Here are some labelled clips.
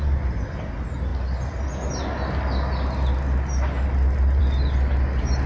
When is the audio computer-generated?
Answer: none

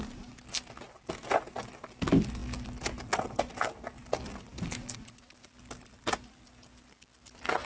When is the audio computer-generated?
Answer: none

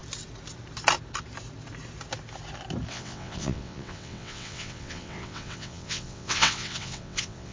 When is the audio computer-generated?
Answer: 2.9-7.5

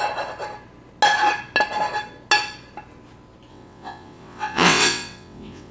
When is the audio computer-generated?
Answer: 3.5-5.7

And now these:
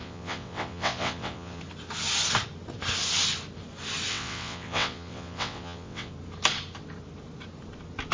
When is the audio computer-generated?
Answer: 0.0-1.6; 4.1-6.1

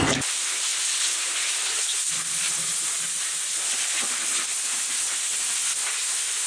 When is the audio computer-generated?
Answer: none